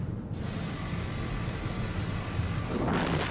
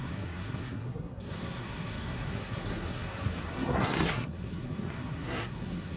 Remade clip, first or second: second